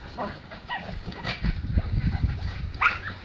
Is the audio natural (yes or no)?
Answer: no